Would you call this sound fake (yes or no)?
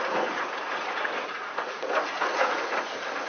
yes